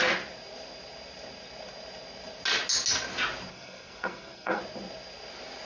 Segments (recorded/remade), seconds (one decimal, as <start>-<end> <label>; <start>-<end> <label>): 0.0-3.5 recorded; 3.5-4.6 remade; 4.6-5.7 recorded